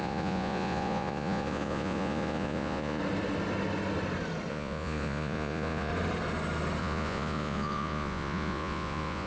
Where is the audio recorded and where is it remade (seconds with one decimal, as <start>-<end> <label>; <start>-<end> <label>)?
0.0-3.0 remade; 3.0-4.5 recorded; 4.5-5.9 remade; 5.9-6.8 recorded; 6.8-9.3 remade